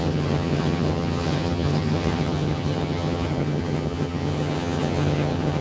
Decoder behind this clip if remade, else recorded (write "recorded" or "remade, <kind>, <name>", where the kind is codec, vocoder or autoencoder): remade, vocoder, HiFi-GAN